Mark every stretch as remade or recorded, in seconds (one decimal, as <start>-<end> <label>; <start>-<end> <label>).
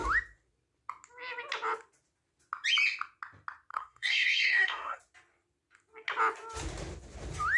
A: 0.0-3.7 recorded; 3.7-5.0 remade; 5.0-7.6 recorded